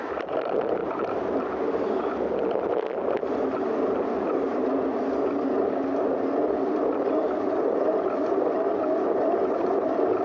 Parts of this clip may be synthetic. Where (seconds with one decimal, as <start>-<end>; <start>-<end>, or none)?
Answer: none